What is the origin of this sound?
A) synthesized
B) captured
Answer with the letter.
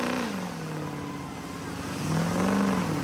B